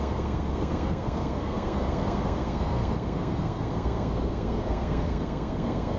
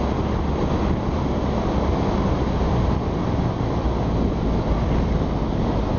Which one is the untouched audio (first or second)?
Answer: second